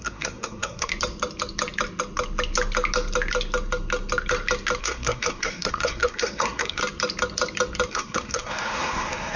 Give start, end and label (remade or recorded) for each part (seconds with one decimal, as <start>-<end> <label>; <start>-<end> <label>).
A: 0.0-0.9 remade; 0.9-4.8 recorded; 4.8-6.8 remade; 6.8-7.9 recorded; 7.9-9.4 remade